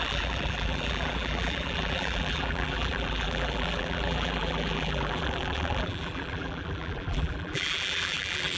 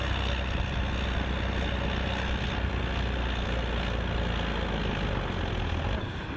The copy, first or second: first